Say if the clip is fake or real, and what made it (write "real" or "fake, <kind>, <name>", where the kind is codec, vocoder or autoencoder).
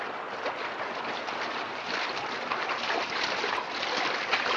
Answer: real